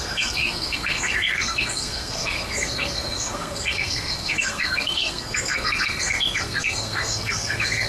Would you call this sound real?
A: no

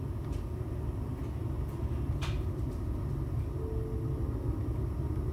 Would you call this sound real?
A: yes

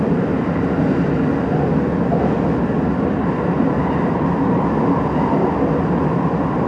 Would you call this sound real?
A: yes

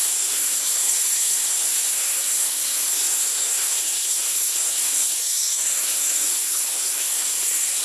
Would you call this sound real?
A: no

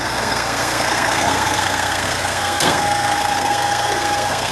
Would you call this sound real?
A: no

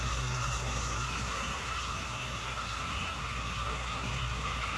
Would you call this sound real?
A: no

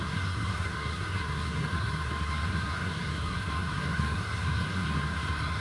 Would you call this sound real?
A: no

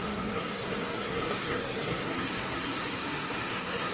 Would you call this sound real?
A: no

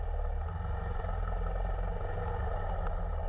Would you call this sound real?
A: yes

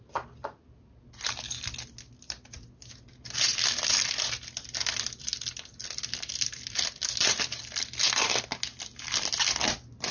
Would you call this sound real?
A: yes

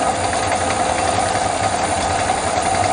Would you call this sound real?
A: yes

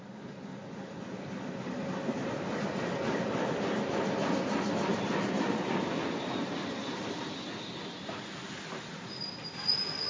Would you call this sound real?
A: yes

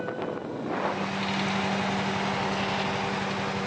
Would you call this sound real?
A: yes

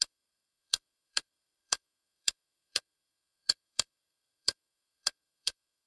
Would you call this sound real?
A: no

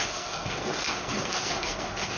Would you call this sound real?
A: no